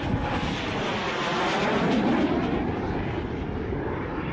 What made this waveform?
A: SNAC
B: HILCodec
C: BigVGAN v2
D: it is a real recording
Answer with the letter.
D